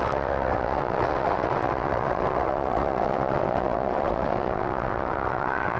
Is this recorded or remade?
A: remade